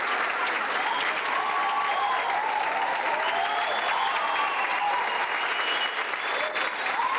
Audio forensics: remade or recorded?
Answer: recorded